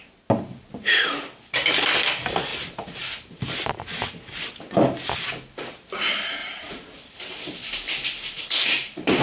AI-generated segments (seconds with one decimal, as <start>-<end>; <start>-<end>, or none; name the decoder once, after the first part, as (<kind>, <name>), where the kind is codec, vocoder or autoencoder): 2.5-3.7 (vocoder, BigVGAN v2); 6.4-9.2